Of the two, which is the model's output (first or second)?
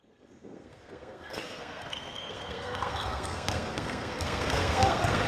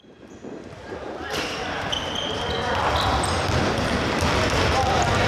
first